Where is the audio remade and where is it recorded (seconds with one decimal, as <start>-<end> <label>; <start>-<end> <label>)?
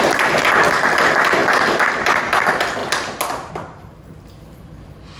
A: 0.0-1.4 recorded; 1.4-2.2 remade; 2.2-5.2 recorded